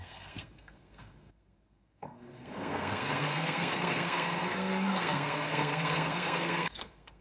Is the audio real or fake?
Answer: fake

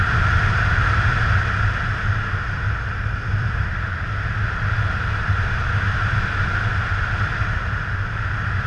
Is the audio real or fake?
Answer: real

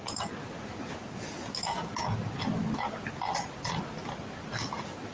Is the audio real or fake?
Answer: real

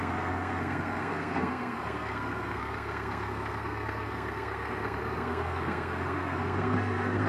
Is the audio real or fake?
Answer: fake